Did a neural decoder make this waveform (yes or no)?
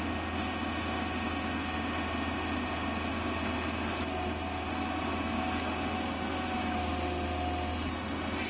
no